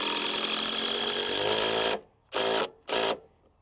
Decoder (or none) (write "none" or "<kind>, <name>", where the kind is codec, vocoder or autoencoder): none